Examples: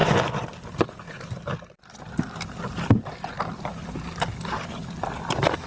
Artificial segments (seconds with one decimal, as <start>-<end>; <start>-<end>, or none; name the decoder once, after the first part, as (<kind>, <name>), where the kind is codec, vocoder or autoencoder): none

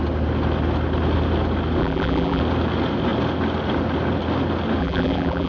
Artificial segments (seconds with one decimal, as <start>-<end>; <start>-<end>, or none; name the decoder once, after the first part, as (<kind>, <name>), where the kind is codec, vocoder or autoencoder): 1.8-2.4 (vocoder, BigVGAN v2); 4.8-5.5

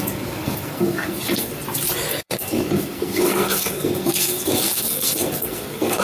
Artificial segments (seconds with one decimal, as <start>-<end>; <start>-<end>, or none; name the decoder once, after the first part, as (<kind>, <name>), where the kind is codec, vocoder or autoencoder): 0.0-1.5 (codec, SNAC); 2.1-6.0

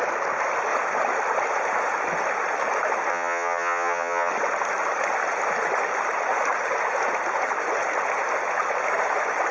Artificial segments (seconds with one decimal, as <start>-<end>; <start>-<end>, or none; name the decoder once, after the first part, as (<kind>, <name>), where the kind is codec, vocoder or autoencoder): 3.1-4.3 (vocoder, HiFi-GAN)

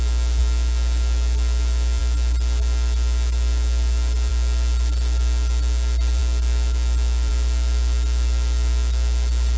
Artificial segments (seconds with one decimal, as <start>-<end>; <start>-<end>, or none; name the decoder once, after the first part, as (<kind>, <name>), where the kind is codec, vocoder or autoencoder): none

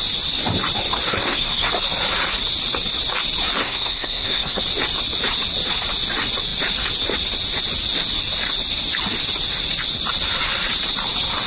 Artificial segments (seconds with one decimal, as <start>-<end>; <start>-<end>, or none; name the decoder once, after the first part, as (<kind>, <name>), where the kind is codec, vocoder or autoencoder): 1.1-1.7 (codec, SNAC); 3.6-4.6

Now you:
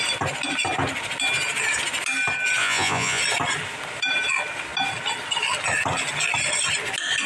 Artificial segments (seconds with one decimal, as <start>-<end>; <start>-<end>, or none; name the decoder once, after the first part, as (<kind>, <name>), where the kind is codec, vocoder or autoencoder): 2.6-3.2 (vocoder, Vocos)

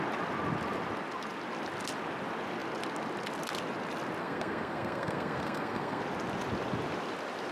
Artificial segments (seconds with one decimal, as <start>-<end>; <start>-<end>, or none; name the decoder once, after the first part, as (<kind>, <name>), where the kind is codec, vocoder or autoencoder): 4.2-6.0 (codec, SNAC)